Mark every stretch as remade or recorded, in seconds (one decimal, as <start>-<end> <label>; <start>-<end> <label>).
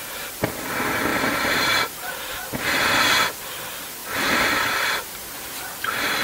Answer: 0.0-1.1 recorded; 1.1-2.3 remade; 2.3-4.0 recorded; 4.0-4.9 remade; 4.9-6.2 recorded